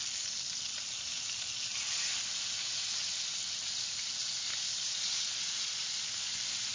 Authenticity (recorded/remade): recorded